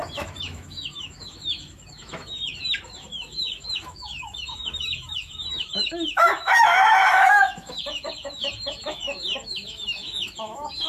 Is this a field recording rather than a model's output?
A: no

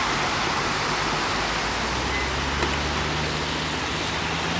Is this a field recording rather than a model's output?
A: yes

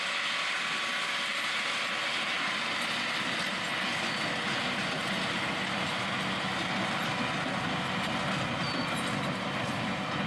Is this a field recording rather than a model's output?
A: yes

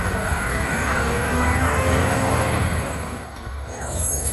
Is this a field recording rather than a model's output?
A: no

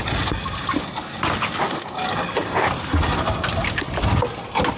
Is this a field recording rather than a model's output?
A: yes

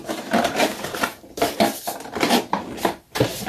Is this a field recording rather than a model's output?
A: yes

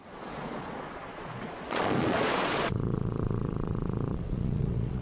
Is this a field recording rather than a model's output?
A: no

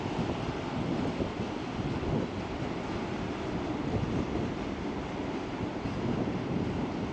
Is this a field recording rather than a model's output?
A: yes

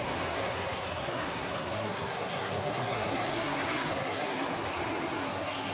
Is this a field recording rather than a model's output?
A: no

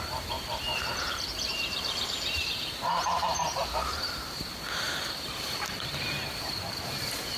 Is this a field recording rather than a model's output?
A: no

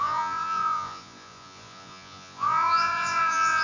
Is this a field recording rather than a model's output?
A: no